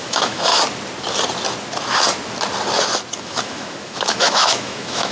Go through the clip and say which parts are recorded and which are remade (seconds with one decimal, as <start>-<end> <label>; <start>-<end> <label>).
0.0-0.5 remade; 0.5-3.2 recorded; 3.2-5.1 remade